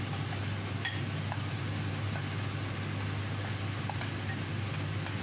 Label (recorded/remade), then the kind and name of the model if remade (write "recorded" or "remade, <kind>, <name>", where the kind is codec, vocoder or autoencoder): recorded